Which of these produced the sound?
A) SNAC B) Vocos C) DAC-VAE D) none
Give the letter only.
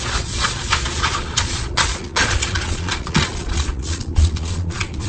B